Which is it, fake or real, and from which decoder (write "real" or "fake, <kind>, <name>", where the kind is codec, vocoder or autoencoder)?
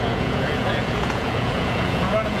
fake, vocoder, Vocos